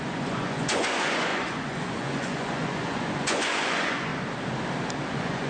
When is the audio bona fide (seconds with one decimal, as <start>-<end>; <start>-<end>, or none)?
4.1-5.1